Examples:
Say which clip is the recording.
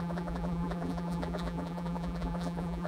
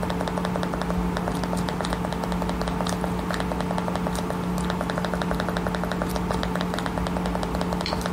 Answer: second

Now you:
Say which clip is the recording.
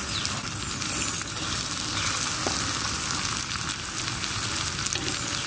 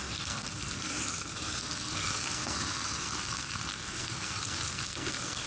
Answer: first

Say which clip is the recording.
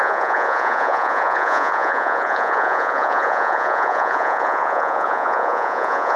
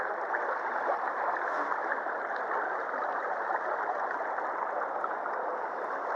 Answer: second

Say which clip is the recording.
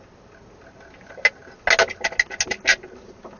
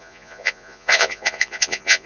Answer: first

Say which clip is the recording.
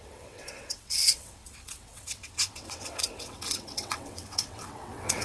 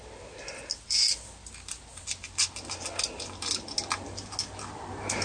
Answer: second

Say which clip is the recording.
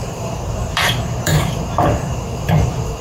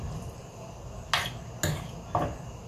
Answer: second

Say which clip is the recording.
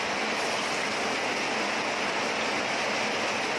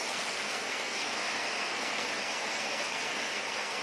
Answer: first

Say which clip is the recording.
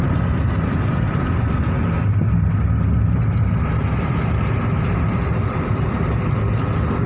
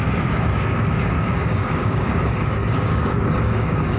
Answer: first